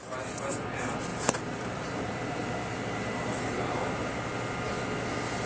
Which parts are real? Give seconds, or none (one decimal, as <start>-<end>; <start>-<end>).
0.0-1.1; 2.0-2.4; 4.2-5.5